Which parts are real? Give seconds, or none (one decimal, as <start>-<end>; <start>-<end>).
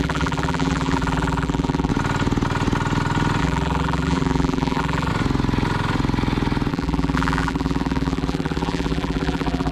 1.9-3.4; 5.1-6.7